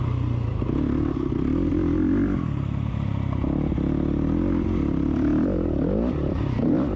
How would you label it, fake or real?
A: fake